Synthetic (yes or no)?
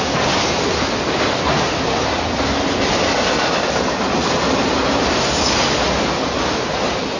no